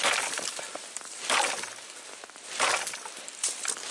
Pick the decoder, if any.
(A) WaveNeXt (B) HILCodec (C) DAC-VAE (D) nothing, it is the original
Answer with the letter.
D